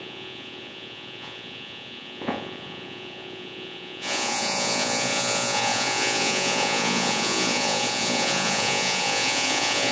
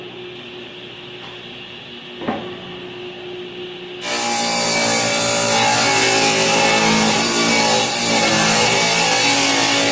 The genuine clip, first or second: second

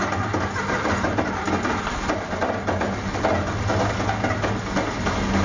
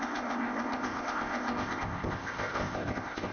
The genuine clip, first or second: first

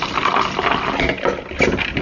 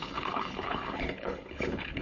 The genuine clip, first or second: first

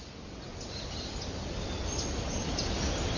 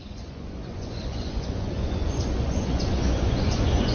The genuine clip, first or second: first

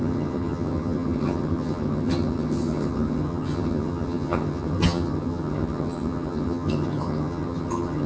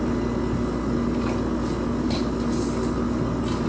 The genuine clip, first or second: second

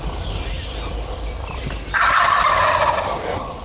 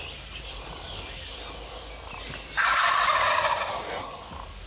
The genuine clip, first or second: second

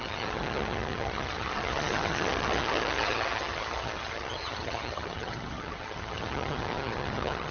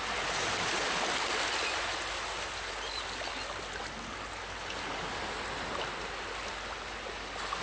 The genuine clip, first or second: second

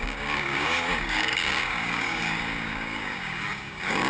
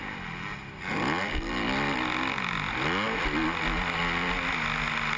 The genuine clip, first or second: second